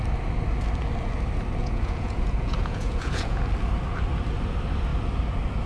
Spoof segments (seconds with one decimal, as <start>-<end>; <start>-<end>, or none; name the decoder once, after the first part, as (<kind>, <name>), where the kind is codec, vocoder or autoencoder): 1.6-3.4 (vocoder, Vocos)